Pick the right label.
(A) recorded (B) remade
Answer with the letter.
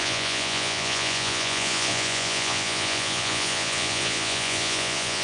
B